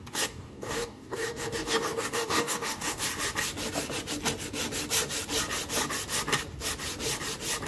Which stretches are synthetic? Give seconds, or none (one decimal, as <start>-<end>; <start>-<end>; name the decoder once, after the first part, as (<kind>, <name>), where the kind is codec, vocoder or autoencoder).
0.0-3.0 (codec, DAC)